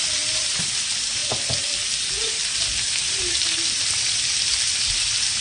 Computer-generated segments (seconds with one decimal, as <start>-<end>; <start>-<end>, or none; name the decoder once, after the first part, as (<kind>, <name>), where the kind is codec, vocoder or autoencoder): none